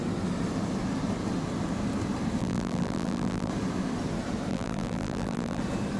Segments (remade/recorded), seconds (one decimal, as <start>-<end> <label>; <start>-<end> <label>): 0.0-2.4 recorded; 2.4-3.5 remade; 3.5-4.5 recorded; 4.5-5.6 remade; 5.6-6.0 recorded